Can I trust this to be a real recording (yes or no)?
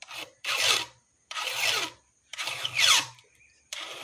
no